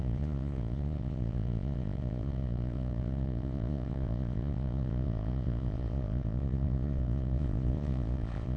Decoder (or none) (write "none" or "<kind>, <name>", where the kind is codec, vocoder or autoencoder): vocoder, Vocos